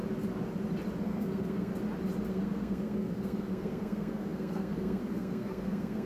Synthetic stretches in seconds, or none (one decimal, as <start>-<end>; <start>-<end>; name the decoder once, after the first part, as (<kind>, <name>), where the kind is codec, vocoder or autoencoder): 1.0-1.7 (codec, SNAC); 2.3-6.1